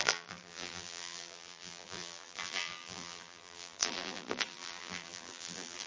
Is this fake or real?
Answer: fake